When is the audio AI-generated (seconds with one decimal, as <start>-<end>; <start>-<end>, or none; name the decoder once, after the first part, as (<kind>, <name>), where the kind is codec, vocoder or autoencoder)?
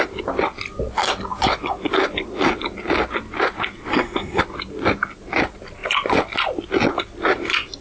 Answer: 3.9-4.4 (codec, SNAC)